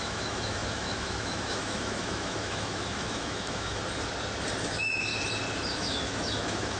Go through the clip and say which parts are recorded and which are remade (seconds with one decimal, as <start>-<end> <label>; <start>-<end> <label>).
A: 0.0-3.8 remade; 3.8-4.6 recorded; 4.6-5.1 remade; 5.1-5.7 recorded; 5.7-6.8 remade